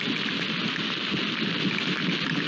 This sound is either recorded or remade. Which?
recorded